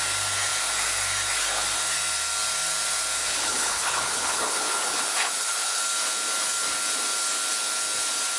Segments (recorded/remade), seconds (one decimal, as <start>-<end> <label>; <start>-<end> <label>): 0.0-3.2 recorded; 3.2-5.8 remade; 5.8-8.4 recorded